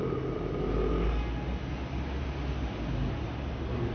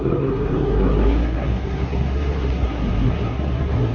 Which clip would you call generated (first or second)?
second